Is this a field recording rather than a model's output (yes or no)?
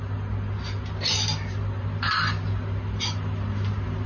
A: yes